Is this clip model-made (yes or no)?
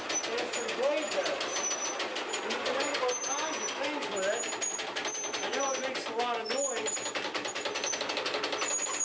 no